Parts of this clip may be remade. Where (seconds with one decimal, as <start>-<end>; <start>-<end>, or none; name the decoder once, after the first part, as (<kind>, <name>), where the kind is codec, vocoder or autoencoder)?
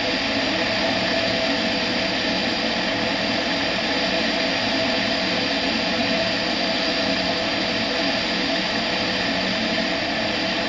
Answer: none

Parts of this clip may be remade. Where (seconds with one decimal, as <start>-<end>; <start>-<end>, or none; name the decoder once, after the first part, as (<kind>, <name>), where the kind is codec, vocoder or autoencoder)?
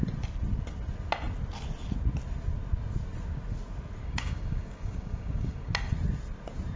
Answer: 4.0-5.7 (codec, DAC)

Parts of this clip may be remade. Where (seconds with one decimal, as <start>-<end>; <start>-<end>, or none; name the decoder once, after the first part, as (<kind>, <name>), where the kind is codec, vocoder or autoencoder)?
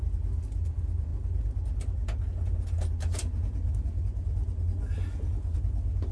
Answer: none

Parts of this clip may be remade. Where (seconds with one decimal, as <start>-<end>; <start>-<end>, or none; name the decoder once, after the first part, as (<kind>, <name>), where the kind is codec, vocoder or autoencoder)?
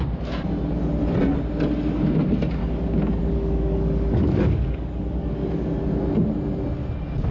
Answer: 2.6-5.5 (codec, DAC)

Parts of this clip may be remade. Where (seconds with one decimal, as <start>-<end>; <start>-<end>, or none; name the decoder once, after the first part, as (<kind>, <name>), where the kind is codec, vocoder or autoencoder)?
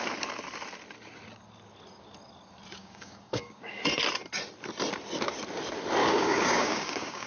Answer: 2.8-3.8 (codec, DAC); 6.0-7.3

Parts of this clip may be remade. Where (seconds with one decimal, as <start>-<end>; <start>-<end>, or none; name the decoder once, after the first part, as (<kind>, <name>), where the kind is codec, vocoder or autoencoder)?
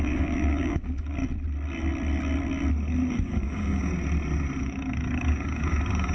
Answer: 0.0-1.2 (codec, DAC); 3.1-3.9; 4.6-6.1